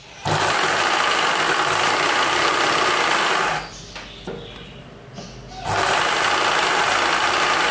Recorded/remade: recorded